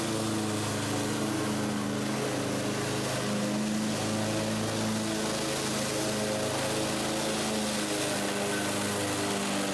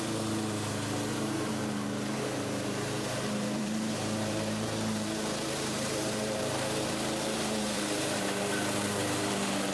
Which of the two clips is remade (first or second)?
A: second